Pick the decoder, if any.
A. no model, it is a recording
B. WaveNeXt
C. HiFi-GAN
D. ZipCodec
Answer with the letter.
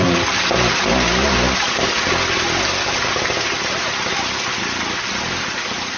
A